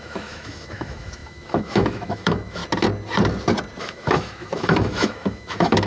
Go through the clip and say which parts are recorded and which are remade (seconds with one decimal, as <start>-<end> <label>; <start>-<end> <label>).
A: 0.0-2.6 remade; 2.6-3.8 recorded; 3.8-5.9 remade